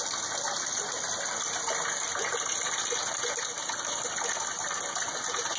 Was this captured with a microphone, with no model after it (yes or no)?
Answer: yes